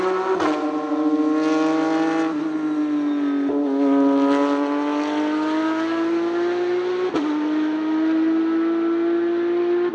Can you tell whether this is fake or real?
real